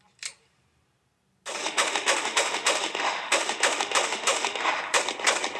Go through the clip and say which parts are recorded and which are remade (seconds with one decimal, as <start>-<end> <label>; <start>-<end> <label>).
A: 0.0-1.6 recorded; 1.6-5.0 remade; 5.0-5.6 recorded